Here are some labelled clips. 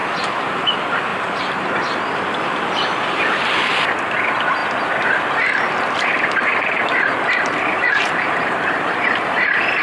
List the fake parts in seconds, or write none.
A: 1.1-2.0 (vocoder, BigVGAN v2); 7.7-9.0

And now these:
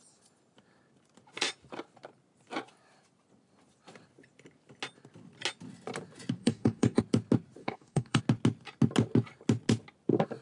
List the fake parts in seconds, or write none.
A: 6.4-7.0 (codec, DAC); 7.6-8.2

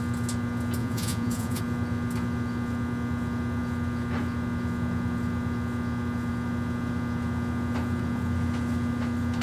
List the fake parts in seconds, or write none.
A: 0.8-1.6 (vocoder, Vocos)

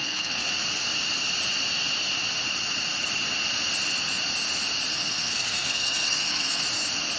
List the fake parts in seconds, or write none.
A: 0.0-0.5 (codec, SNAC); 4.9-6.6

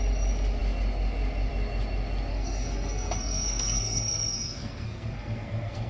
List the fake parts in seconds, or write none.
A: 2.3-5.9 (codec, SNAC)

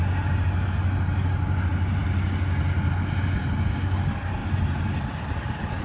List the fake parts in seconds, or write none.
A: none

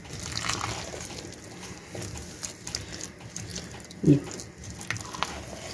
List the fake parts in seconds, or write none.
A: none